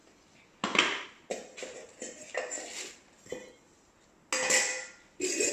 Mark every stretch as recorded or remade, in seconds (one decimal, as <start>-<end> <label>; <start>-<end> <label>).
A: 0.0-5.5 recorded